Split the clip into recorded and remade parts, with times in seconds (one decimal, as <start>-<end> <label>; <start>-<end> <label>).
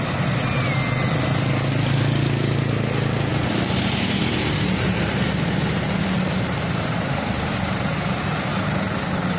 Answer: 0.0-3.3 recorded; 3.3-8.2 remade; 8.2-9.4 recorded